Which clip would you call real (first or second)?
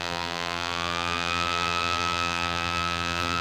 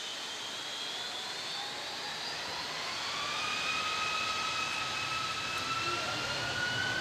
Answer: second